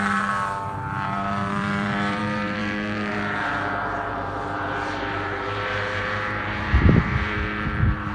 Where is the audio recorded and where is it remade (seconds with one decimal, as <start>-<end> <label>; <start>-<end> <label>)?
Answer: 0.0-8.1 remade